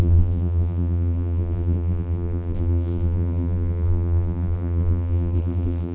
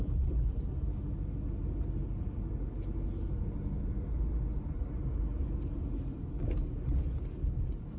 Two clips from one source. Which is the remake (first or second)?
first